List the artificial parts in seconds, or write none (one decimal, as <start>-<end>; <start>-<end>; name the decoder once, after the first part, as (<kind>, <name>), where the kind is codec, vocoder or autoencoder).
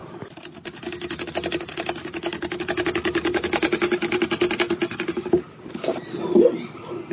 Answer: 0.0-0.8 (vocoder, BigVGAN v2); 1.7-6.0